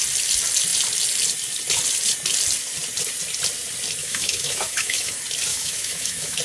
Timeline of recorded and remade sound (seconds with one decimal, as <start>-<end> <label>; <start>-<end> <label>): 0.0-4.0 recorded; 4.0-5.1 remade; 5.1-5.5 recorded; 5.5-6.4 remade